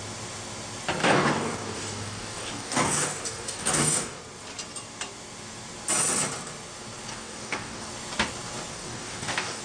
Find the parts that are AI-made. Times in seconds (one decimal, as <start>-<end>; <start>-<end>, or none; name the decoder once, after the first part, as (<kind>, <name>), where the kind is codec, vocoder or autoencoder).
1.0-4.2 (codec, DAC); 7.1-7.9; 8.7-9.6